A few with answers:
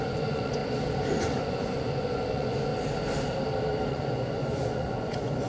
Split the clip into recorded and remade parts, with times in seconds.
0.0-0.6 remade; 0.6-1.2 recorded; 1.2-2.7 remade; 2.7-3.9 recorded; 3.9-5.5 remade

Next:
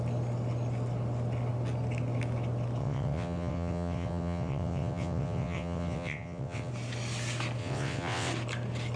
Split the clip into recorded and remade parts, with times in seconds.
0.0-2.8 recorded; 2.8-6.7 remade; 6.7-7.6 recorded; 7.6-8.3 remade; 8.3-9.0 recorded

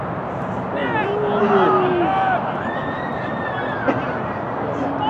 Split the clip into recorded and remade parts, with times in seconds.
0.0-0.8 remade; 0.8-3.9 recorded; 3.9-5.1 remade